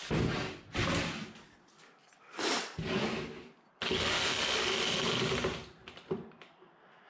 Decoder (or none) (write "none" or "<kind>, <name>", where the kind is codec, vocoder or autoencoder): none